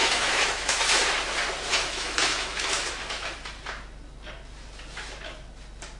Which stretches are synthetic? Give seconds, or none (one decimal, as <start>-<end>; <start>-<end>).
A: 0.0-0.8; 1.7-2.9